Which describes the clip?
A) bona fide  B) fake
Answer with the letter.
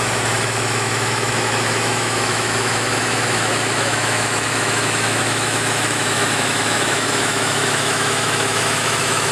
B